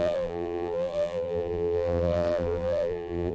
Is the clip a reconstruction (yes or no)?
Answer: yes